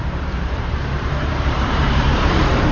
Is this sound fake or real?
fake